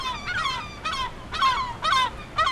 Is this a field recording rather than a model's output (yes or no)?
yes